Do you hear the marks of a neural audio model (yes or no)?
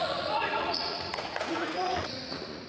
yes